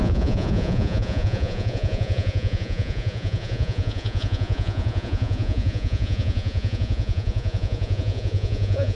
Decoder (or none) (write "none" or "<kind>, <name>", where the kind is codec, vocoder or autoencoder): vocoder, Vocos